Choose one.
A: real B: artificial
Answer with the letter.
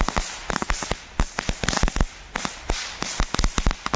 A